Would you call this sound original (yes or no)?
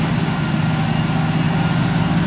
yes